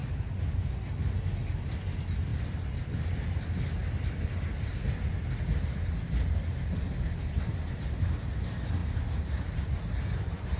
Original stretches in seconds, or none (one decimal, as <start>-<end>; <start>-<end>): 0.0-10.6